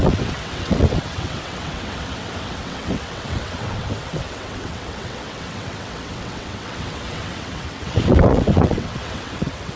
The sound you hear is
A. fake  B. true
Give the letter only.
A